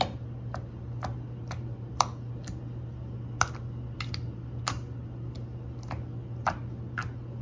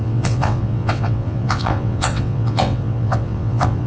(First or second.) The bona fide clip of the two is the first